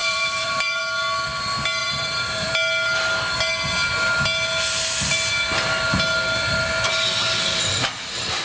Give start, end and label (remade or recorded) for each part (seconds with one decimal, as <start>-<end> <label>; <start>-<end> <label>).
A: 0.0-0.8 remade; 0.8-1.8 recorded; 1.8-2.5 remade; 2.5-8.4 recorded

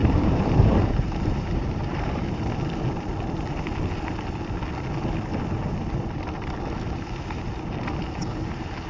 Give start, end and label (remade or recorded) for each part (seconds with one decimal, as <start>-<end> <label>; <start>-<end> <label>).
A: 0.0-2.4 remade; 2.4-8.9 recorded

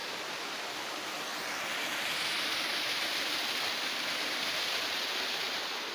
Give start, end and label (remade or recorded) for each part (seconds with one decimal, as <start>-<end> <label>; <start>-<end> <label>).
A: 0.0-0.9 remade; 0.9-1.3 recorded; 1.3-4.8 remade; 4.8-5.9 recorded

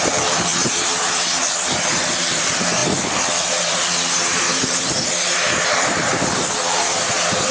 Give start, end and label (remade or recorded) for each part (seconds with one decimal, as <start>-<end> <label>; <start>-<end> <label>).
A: 0.0-2.8 remade; 2.8-3.5 recorded; 3.5-7.5 remade

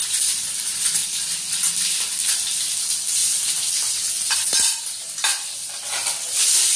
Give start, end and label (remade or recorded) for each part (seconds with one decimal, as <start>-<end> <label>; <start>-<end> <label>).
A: 0.0-3.2 recorded; 3.2-3.7 remade; 3.7-6.8 recorded